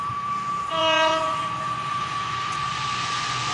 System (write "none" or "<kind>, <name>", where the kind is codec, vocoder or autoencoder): vocoder, Vocos